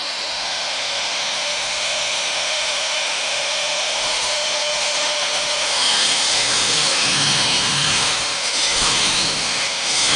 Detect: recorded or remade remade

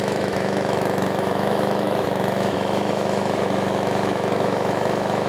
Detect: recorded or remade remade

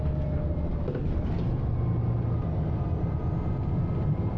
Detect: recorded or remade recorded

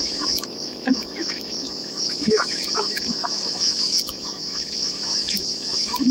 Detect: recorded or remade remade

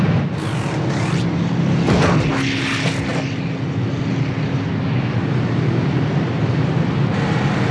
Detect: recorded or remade recorded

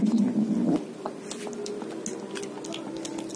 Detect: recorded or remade recorded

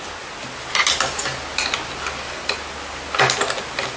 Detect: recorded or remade recorded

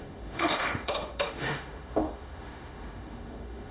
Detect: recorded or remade remade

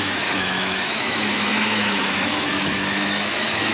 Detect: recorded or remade remade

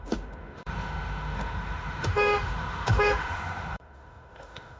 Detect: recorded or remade remade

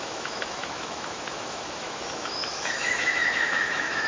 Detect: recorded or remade remade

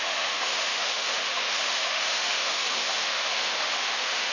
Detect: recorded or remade remade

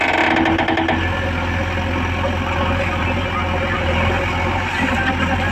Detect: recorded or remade recorded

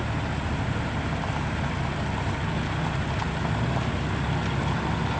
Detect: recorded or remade recorded